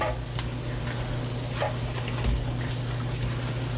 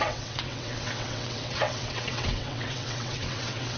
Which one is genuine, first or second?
first